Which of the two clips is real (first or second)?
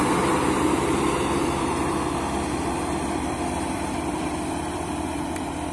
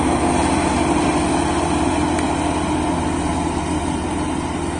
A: second